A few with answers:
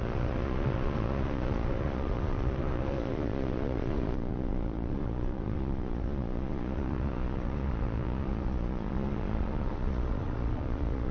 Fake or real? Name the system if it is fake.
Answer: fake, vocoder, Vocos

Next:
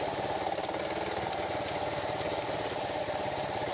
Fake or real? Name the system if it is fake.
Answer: real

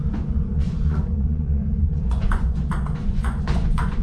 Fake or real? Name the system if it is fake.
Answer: fake, vocoder, Vocos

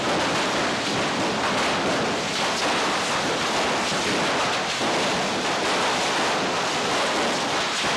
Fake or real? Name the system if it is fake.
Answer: real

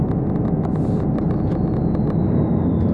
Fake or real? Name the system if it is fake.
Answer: real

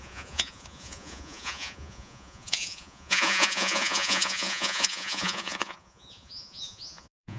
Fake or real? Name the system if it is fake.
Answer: fake, vocoder, Vocos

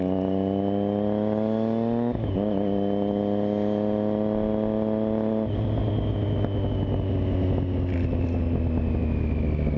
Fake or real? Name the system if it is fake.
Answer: real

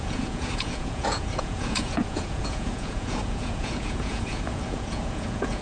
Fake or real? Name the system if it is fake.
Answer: fake, vocoder, Vocos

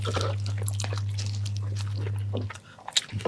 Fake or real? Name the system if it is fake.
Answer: real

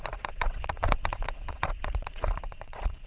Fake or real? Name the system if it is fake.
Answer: fake, vocoder, Vocos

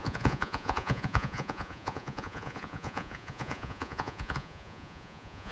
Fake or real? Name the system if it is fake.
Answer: fake, vocoder, Vocos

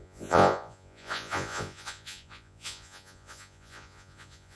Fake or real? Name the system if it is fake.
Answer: fake, vocoder, Vocos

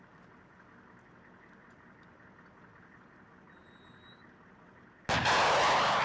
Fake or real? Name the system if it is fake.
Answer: real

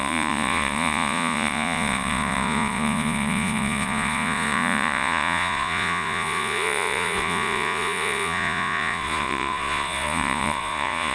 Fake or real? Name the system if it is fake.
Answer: fake, vocoder, Vocos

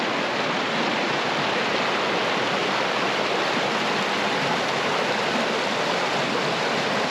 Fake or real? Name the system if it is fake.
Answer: real